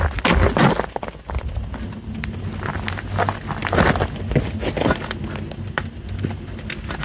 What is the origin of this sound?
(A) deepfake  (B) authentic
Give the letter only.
B